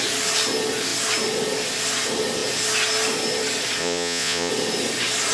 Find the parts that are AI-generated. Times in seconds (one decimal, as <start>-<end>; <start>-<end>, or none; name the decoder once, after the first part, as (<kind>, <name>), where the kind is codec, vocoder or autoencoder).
3.8-4.5 (vocoder, Vocos)